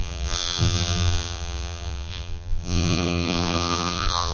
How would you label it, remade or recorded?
remade